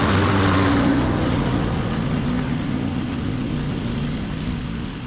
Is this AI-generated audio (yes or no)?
no